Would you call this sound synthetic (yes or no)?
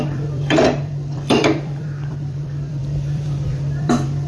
yes